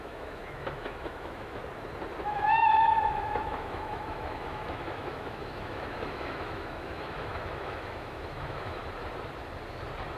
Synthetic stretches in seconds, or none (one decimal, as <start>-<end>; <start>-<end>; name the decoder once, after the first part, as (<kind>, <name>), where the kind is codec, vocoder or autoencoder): 0.0-1.6 (autoencoder, DAC-VAE); 2.2-8.8